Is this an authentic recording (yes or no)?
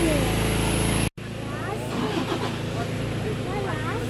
yes